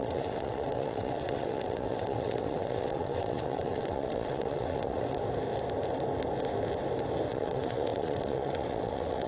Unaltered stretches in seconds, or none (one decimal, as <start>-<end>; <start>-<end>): 5.2-7.3